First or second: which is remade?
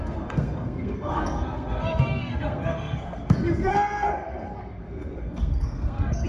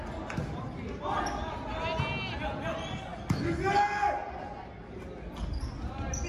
first